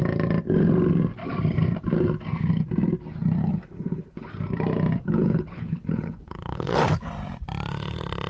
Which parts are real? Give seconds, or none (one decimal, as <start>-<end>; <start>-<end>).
0.0-3.4; 4.3-5.0; 6.7-8.3

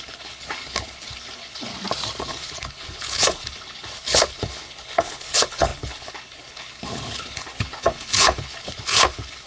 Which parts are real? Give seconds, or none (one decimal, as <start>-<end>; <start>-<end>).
1.7-2.2